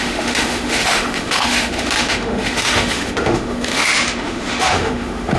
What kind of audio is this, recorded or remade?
remade